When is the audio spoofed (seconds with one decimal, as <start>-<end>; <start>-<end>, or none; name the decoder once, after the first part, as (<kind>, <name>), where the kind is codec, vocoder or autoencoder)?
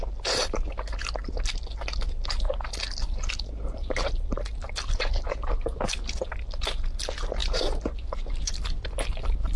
none